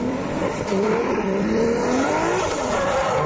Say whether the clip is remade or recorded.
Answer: remade